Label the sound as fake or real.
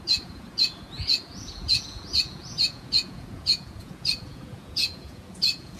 fake